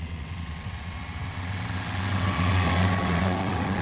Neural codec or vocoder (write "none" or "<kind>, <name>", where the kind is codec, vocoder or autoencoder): vocoder, WaveNeXt